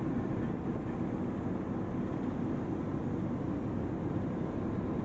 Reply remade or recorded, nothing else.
recorded